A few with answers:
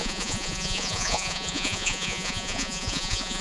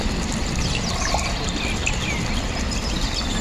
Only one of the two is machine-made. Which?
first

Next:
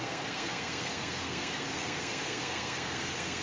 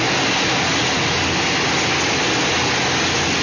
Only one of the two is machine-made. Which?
first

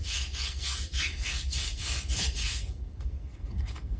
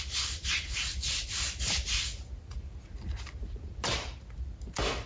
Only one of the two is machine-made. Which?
first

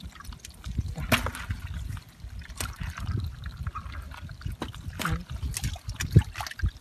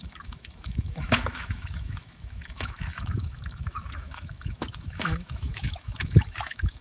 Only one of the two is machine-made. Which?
second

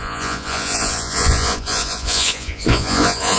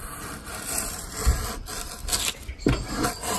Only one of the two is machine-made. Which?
first